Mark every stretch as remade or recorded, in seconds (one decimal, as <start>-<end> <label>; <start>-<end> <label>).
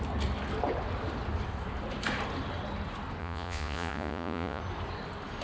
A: 0.0-3.2 recorded; 3.2-4.6 remade; 4.6-5.4 recorded